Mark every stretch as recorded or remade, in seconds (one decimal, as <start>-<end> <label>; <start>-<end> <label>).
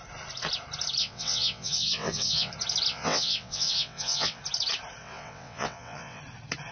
0.0-1.0 recorded; 1.0-2.5 remade; 2.5-2.9 recorded; 2.9-4.4 remade; 4.4-5.0 recorded; 5.0-6.2 remade; 6.2-6.7 recorded